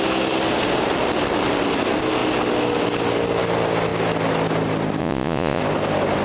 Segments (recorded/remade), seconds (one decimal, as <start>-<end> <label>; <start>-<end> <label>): 0.0-5.0 recorded; 5.0-5.6 remade; 5.6-6.2 recorded